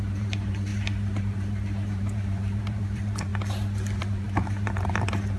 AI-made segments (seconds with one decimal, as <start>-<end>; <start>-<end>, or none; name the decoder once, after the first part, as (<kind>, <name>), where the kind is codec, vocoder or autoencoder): 0.0-0.7 (vocoder, BigVGAN v2); 1.2-3.3; 4.0-5.4